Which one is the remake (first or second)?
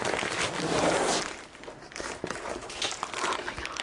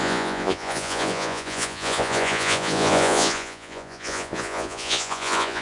second